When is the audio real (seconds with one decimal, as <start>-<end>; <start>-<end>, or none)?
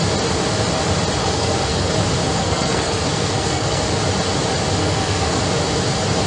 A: 0.0-1.2; 1.9-2.4; 3.8-4.8; 5.4-6.3